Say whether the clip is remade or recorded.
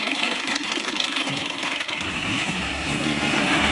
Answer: remade